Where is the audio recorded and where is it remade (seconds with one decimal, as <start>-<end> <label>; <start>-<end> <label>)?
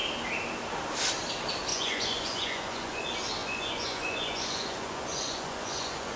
0.0-1.7 recorded; 1.7-3.0 remade; 3.0-3.4 recorded; 3.4-6.2 remade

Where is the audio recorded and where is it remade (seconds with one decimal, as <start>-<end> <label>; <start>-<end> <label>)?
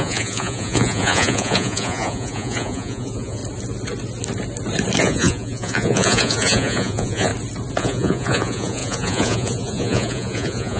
0.0-3.4 remade; 3.4-5.0 recorded; 5.0-7.3 remade; 7.3-7.8 recorded; 7.8-10.8 remade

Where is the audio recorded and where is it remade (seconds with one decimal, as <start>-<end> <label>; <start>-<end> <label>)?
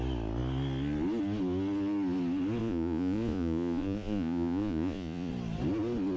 0.0-2.6 recorded; 2.6-5.3 remade; 5.3-6.2 recorded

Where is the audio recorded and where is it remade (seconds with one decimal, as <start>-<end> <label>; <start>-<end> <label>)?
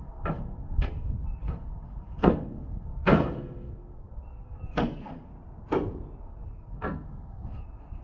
0.0-5.3 remade; 5.3-6.2 recorded; 6.2-8.0 remade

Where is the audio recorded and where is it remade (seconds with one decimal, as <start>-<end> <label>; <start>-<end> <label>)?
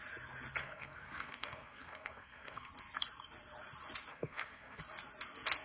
0.0-0.6 recorded; 0.6-2.7 remade; 2.7-4.1 recorded; 4.1-4.8 remade; 4.8-5.6 recorded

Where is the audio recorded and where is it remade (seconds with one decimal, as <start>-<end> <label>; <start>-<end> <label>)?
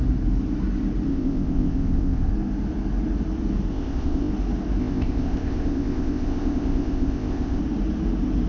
0.0-1.1 recorded; 1.1-2.3 remade; 2.3-3.7 recorded; 3.7-4.3 remade; 4.3-4.8 recorded; 4.8-7.6 remade; 7.6-8.5 recorded